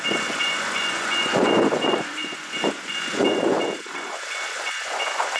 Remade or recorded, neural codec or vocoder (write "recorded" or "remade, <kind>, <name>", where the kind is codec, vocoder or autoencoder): remade, vocoder, Vocos